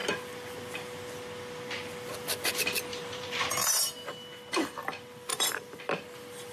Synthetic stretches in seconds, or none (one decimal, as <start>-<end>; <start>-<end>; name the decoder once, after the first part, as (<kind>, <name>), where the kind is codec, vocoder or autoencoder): 2.9-3.9 (vocoder, BigVGAN v2); 5.3-5.8